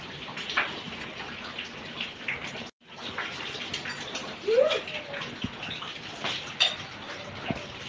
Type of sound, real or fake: real